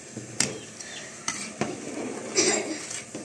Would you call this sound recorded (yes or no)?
yes